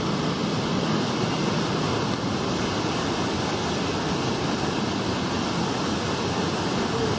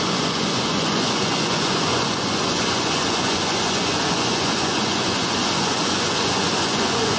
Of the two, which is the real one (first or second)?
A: first